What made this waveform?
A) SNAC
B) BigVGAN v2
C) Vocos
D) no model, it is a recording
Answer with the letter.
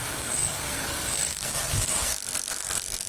A